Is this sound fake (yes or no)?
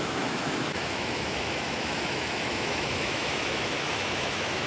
yes